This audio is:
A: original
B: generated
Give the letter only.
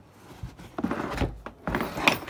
A